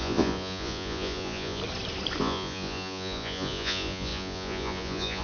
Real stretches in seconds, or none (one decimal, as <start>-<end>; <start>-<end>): 1.6-2.2